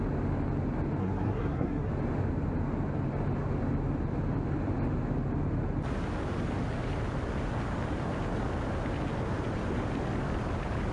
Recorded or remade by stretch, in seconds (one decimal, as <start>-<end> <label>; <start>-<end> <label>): 0.0-1.0 recorded; 1.0-1.9 remade; 1.9-10.9 recorded